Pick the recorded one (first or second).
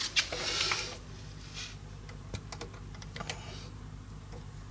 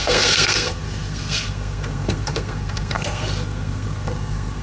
first